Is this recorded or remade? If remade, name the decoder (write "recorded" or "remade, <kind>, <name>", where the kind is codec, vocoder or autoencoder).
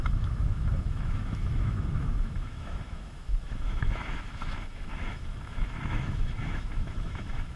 remade, autoencoder, DAC-VAE